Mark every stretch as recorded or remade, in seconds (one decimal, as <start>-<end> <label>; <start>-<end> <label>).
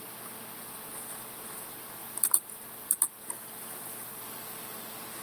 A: 0.0-2.0 recorded; 2.0-4.8 remade; 4.8-5.2 recorded